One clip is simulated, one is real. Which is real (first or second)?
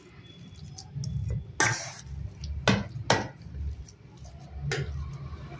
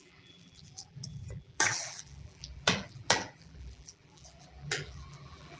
first